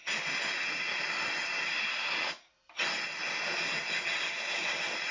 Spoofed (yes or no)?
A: no